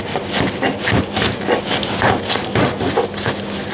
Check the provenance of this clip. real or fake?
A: real